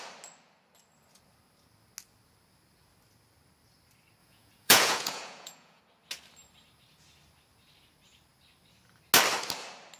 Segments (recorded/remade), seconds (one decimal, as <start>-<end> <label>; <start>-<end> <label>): 0.0-4.2 recorded; 4.2-5.8 remade; 5.8-10.0 recorded